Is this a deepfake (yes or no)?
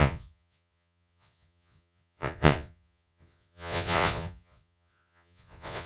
yes